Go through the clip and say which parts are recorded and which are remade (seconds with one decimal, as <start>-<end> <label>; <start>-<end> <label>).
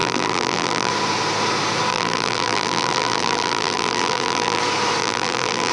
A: 0.0-0.9 remade; 0.9-1.9 recorded; 1.9-4.6 remade; 4.6-5.0 recorded; 5.0-5.7 remade